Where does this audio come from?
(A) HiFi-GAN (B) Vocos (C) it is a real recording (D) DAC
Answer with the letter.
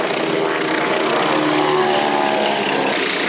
C